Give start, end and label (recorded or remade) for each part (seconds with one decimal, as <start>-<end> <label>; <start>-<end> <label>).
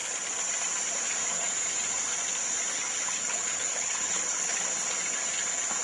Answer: 0.0-2.7 recorded; 2.7-4.6 remade; 4.6-5.8 recorded